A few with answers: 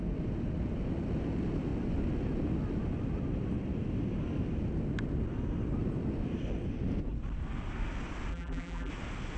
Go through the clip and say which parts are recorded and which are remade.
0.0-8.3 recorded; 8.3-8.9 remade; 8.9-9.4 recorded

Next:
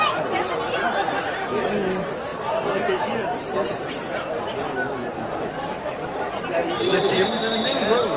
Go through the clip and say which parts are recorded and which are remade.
0.0-2.3 recorded; 2.3-4.4 remade; 4.4-5.6 recorded; 5.6-7.3 remade; 7.3-8.2 recorded

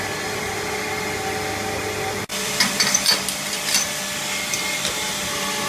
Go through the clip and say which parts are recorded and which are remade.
0.0-2.3 recorded; 2.3-4.0 remade; 4.0-5.7 recorded

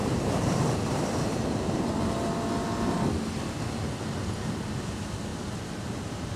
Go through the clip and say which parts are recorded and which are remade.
0.0-1.8 remade; 1.8-5.3 recorded; 5.3-6.4 remade

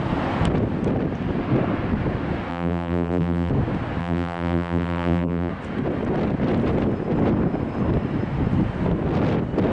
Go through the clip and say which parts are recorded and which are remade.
0.0-2.5 recorded; 2.5-3.5 remade; 3.5-4.0 recorded; 4.0-5.5 remade; 5.5-9.7 recorded